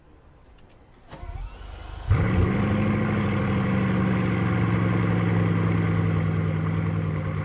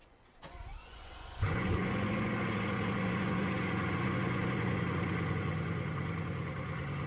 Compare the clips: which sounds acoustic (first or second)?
first